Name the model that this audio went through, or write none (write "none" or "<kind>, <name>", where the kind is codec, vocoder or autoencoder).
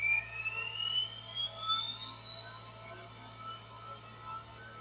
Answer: none